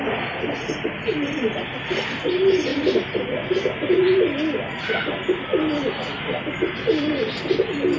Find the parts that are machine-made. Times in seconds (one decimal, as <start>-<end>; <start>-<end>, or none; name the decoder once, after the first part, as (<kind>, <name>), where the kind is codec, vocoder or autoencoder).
none